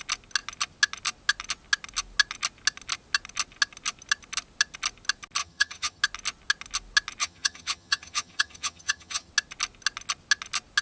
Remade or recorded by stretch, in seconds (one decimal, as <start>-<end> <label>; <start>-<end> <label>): 0.0-5.4 recorded; 5.4-6.0 remade; 6.0-7.2 recorded; 7.2-9.3 remade; 9.3-10.8 recorded